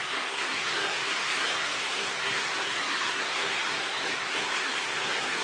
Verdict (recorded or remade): remade